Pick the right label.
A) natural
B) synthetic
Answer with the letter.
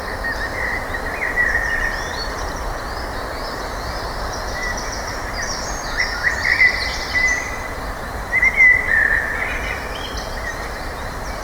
B